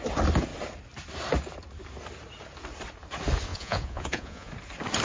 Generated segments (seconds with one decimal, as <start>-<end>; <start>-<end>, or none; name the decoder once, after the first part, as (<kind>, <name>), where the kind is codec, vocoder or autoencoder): 3.5-4.5 (vocoder, Vocos)